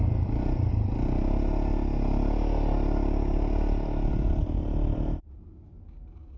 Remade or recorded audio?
recorded